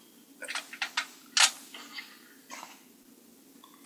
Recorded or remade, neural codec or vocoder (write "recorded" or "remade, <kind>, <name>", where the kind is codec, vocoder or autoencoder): recorded